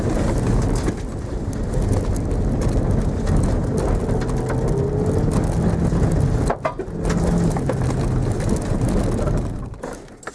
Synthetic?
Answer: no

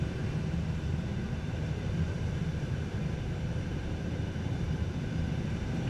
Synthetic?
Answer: yes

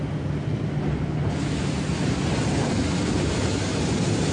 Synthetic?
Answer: no